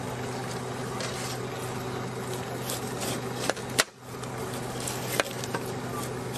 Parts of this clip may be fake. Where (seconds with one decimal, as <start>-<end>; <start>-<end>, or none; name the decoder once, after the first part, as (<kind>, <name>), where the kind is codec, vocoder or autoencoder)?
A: none